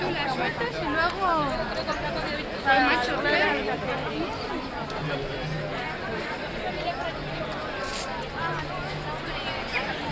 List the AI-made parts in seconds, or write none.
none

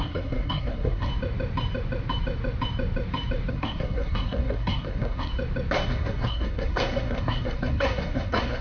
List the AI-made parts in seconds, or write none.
0.0-1.1 (codec, SNAC); 3.5-5.3; 5.9-8.6